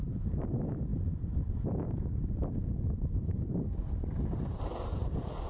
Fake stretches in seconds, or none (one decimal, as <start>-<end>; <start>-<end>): none